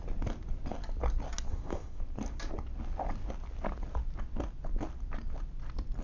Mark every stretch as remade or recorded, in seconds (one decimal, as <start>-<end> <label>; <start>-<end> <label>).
0.0-1.5 recorded; 1.5-2.0 remade; 2.0-6.0 recorded

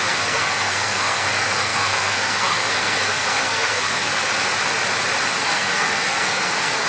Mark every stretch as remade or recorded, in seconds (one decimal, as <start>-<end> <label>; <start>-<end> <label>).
0.0-4.1 remade; 4.1-5.4 recorded; 5.4-6.9 remade

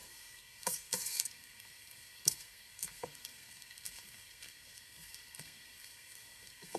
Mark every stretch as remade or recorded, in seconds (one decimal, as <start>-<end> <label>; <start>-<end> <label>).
0.0-6.8 remade

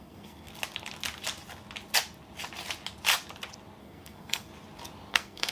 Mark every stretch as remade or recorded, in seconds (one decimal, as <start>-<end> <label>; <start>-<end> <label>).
0.0-0.5 remade; 0.5-3.8 recorded; 3.8-4.5 remade; 4.5-5.1 recorded; 5.1-5.5 remade

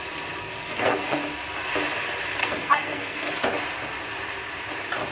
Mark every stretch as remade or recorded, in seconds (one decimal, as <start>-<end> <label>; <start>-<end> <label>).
0.0-0.4 recorded; 0.4-1.2 remade; 1.2-2.4 recorded; 2.4-3.3 remade; 3.3-5.1 recorded

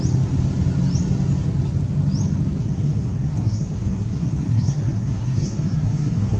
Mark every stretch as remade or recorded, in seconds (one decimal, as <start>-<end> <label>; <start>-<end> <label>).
0.0-2.6 recorded; 2.6-6.4 remade

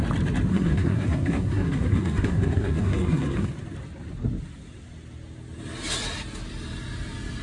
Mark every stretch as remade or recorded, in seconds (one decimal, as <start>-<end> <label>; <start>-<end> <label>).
0.0-0.5 recorded; 0.5-3.5 remade; 3.5-7.4 recorded

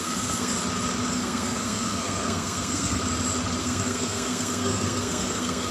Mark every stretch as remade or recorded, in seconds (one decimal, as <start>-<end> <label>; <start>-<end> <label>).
0.0-0.5 remade; 0.5-1.1 recorded; 1.1-3.0 remade; 3.0-3.6 recorded; 3.6-5.7 remade